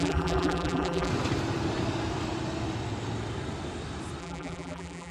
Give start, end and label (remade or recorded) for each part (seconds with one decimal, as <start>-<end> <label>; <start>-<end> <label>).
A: 0.0-1.1 remade; 1.1-4.2 recorded; 4.2-5.1 remade

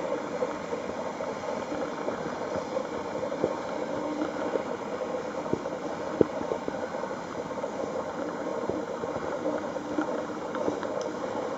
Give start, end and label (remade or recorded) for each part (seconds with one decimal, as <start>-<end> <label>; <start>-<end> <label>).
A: 0.0-11.6 recorded

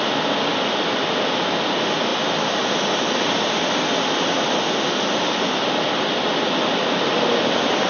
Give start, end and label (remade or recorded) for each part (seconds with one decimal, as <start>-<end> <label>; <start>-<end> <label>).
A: 0.0-7.9 recorded

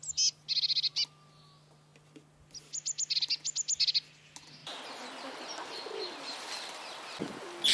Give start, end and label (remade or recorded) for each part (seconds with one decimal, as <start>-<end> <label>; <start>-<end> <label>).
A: 0.0-7.7 recorded

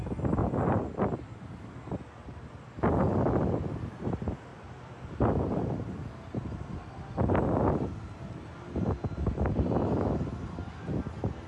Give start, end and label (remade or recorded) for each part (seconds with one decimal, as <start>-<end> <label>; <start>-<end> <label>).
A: 0.0-0.4 recorded; 0.4-1.7 remade; 1.7-4.5 recorded; 4.5-6.4 remade; 6.4-11.5 recorded

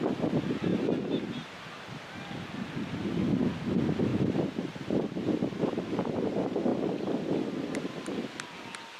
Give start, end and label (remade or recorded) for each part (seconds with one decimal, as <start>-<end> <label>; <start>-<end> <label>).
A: 0.0-4.1 recorded; 4.1-6.0 remade; 6.0-9.0 recorded